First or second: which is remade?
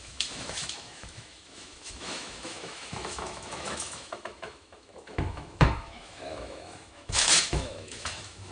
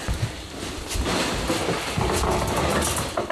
first